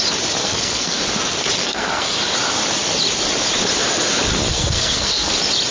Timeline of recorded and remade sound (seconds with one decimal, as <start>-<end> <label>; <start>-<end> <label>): 0.0-0.4 recorded; 0.4-1.0 remade; 1.0-1.6 recorded; 1.6-2.1 remade; 2.1-4.5 recorded; 4.5-5.3 remade; 5.3-5.7 recorded